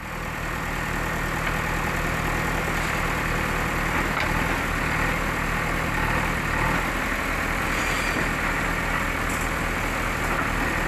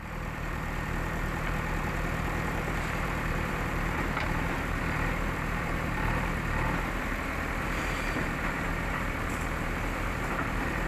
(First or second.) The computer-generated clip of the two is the second